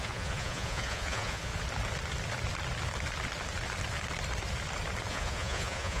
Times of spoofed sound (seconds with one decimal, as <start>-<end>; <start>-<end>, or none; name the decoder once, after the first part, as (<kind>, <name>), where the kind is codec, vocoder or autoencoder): 0.0-1.5 (vocoder, Vocos); 5.1-6.0